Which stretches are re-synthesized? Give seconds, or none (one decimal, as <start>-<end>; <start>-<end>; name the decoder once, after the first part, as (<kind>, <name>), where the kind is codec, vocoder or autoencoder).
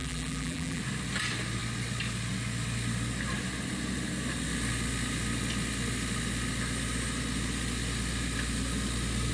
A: 0.0-0.8 (vocoder, BigVGAN v2)